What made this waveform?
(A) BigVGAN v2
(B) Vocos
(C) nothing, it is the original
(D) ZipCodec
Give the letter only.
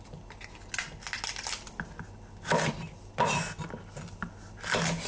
C